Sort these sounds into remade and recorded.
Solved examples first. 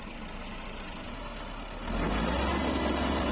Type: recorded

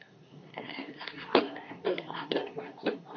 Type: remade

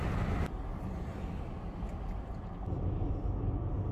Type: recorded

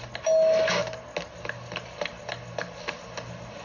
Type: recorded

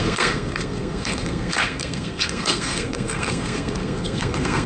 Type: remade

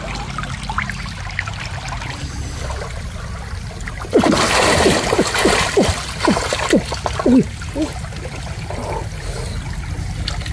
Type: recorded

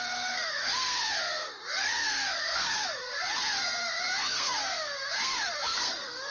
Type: remade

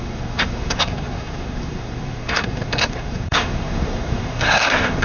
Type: remade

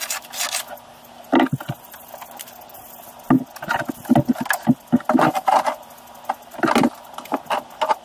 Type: recorded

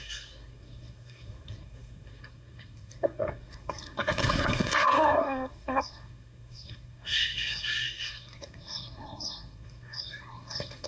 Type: remade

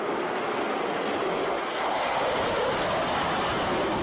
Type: recorded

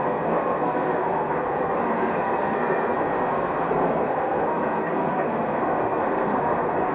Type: remade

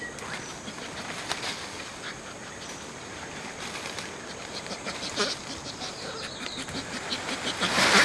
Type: recorded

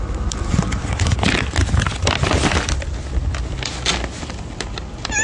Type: recorded